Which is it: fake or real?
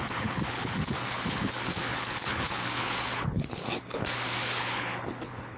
fake